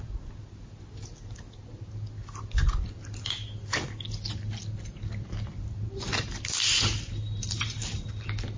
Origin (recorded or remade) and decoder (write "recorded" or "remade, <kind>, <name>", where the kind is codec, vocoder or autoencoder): recorded